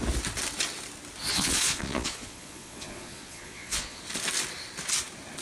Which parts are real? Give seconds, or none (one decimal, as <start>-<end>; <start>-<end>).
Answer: 0.0-1.3; 4.0-5.4